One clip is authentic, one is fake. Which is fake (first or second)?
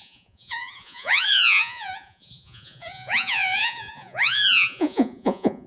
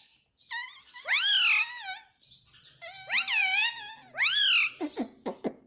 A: first